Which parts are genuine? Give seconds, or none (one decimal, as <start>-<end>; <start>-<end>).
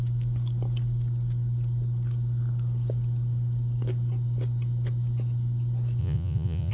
0.0-6.0